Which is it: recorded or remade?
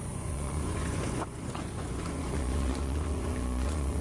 remade